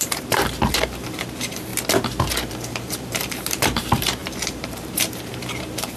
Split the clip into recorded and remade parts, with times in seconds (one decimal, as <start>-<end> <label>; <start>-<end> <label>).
0.0-1.7 remade; 1.7-2.5 recorded; 2.5-6.0 remade